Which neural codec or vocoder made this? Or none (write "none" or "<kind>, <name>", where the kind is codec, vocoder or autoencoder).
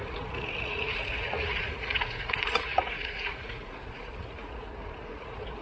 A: vocoder, Vocos